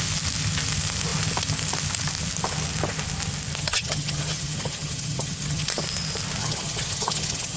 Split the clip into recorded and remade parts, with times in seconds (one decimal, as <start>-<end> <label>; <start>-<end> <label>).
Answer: 0.0-3.6 recorded; 3.6-5.7 remade; 5.7-6.4 recorded; 6.4-7.6 remade